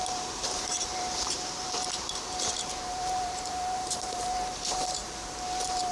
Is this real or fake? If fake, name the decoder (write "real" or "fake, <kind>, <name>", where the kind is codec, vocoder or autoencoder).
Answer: fake, vocoder, BigVGAN v2